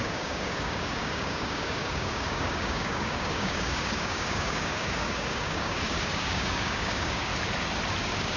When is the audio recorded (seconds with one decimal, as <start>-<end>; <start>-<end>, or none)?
7.3-8.0